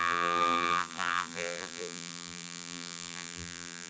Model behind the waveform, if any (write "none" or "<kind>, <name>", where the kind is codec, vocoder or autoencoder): vocoder, BigVGAN v2